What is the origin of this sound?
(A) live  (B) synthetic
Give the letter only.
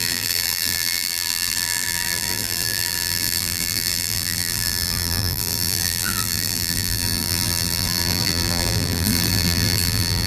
B